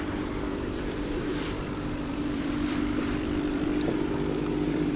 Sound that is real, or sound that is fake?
fake